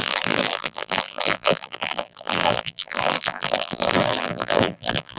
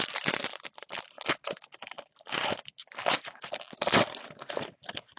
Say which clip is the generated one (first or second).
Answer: first